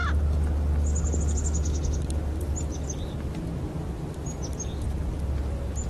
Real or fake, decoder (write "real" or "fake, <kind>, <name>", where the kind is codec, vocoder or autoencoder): real